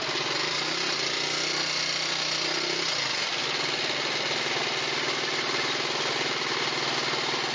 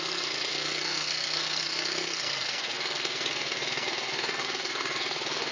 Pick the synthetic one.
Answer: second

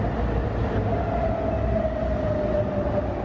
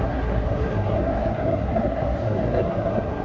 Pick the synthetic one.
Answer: second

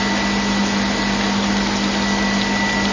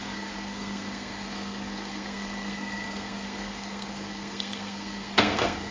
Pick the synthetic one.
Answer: second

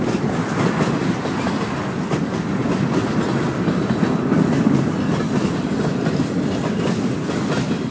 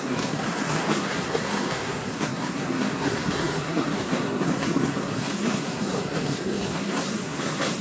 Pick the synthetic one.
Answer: second